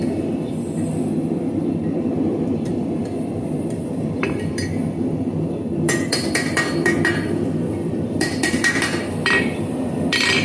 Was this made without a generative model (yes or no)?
no